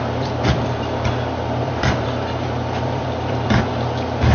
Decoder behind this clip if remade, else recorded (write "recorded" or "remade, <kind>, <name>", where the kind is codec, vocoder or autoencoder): remade, vocoder, BigVGAN v2